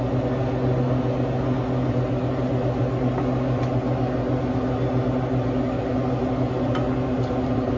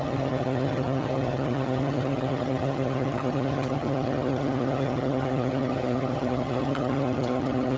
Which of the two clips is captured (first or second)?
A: first